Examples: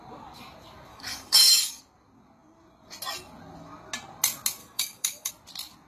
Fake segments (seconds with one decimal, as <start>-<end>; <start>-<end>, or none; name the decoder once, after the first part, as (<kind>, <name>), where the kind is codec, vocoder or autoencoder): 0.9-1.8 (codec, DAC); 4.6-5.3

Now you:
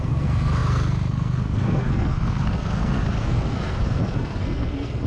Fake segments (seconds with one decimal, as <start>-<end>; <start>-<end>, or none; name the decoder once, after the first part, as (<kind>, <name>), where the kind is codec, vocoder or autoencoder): 0.0-5.1 (codec, SNAC)

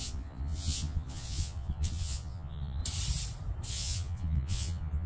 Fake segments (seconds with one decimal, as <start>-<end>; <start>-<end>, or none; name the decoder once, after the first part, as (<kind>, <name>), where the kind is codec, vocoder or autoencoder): 0.0-2.8 (vocoder, Vocos); 3.7-5.1